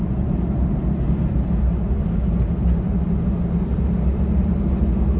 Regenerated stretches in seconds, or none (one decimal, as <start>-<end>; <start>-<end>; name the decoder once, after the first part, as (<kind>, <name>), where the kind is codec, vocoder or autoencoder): none